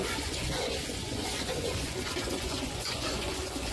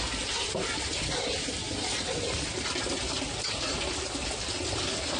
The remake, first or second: first